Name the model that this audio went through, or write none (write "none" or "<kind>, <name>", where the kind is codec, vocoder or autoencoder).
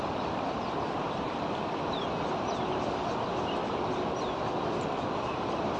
none